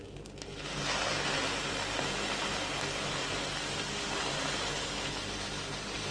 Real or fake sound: real